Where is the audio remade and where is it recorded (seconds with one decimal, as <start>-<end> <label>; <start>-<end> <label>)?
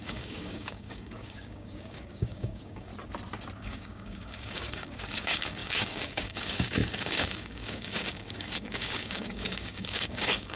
0.0-2.9 remade; 2.9-3.6 recorded; 3.6-10.6 remade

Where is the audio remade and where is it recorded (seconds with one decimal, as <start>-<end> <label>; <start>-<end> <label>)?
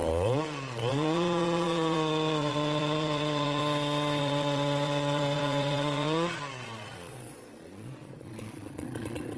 0.0-3.6 remade; 3.6-4.2 recorded; 4.2-9.4 remade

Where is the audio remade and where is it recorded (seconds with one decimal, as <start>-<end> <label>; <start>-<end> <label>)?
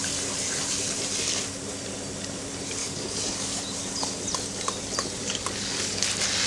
0.0-2.8 recorded; 2.8-3.6 remade; 3.6-5.2 recorded; 5.2-6.1 remade; 6.1-6.5 recorded